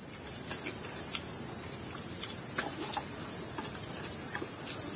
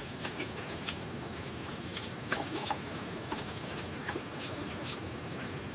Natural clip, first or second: first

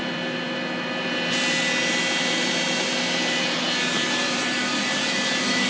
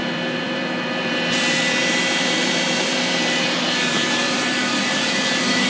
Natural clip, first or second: first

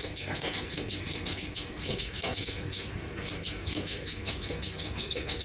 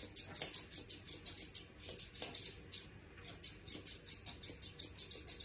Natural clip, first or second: second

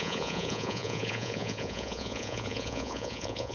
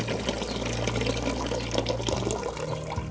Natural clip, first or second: second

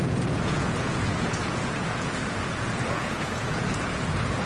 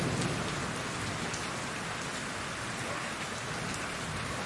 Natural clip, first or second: second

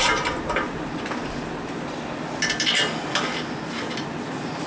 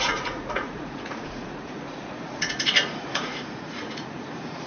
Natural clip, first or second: first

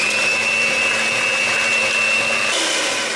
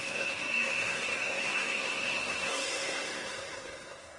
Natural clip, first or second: first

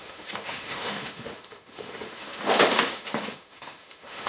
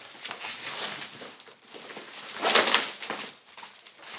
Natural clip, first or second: second